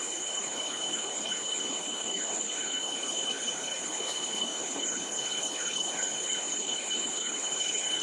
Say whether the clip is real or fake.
fake